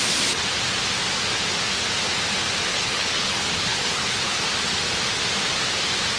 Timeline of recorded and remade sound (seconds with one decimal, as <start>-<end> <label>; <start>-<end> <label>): 0.0-2.7 recorded; 2.7-4.4 remade; 4.4-6.2 recorded